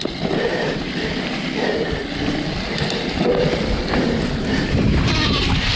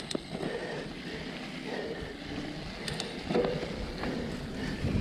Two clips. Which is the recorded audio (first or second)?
second